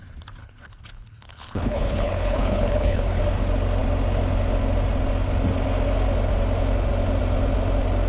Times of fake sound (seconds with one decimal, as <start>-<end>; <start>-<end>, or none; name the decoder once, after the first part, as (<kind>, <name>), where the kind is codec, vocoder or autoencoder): 0.4-3.2 (codec, HILCodec)